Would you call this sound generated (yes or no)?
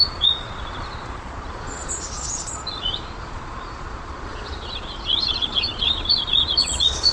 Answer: yes